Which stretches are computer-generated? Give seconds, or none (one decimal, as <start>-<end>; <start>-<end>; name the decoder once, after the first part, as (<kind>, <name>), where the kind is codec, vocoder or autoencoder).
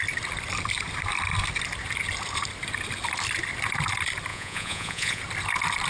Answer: 4.3-5.2 (vocoder, Vocos)